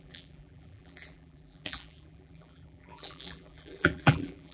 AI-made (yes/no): yes